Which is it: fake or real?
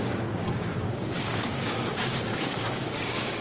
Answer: fake